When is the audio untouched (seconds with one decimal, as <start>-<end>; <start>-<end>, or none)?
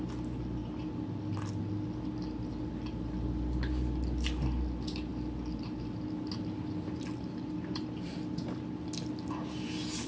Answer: 0.0-10.1